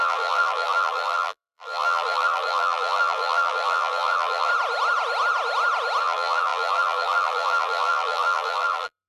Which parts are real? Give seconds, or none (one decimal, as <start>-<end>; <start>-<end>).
4.5-6.0